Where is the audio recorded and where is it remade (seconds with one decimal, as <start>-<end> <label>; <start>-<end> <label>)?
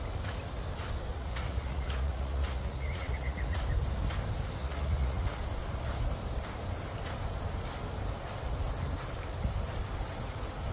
0.0-1.1 recorded; 1.1-3.6 remade; 3.6-4.6 recorded; 4.6-5.4 remade; 5.4-10.7 recorded